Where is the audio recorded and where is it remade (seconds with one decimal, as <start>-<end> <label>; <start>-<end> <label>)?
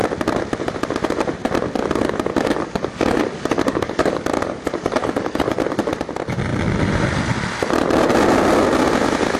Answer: 0.0-2.3 recorded; 2.3-5.6 remade; 5.6-9.4 recorded